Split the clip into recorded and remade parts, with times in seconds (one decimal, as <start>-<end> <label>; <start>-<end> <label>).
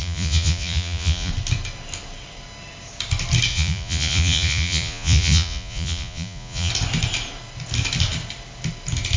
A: 0.0-1.3 remade; 1.3-3.5 recorded; 3.5-6.7 remade; 6.7-9.2 recorded